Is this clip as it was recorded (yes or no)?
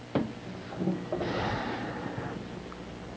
yes